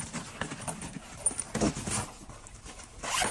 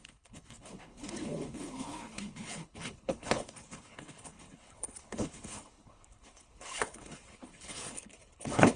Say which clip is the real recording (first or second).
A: first